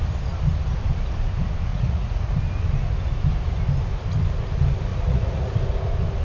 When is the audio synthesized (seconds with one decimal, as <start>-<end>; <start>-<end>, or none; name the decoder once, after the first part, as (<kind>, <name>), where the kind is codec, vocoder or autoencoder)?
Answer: 1.7-2.3 (vocoder, Vocos); 4.9-5.6